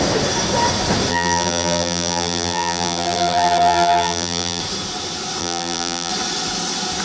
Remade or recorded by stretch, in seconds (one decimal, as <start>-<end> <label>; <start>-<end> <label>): 0.0-1.1 recorded; 1.1-4.6 remade; 4.6-5.4 recorded; 5.4-6.1 remade; 6.1-7.0 recorded